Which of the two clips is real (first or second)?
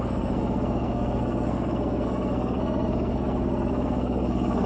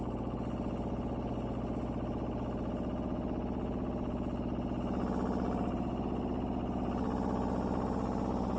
second